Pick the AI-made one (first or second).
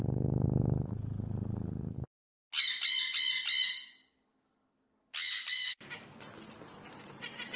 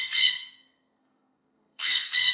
second